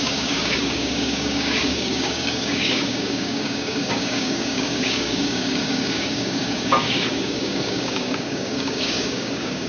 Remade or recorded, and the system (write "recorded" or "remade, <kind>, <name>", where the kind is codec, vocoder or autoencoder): remade, codec, DAC